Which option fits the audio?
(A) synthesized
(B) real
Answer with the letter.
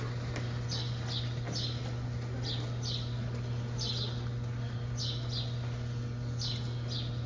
B